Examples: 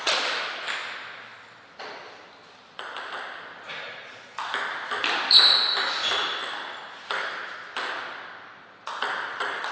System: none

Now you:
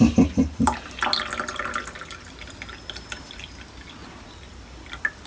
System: none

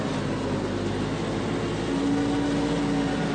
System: none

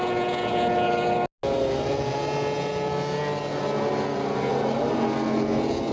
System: none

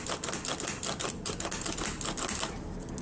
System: none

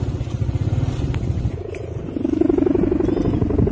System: none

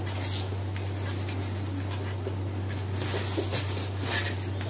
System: none